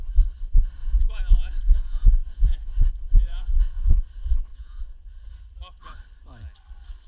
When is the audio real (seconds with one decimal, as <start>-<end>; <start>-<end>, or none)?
0.0-0.8; 2.9-3.3; 3.9-4.5; 5.3-7.1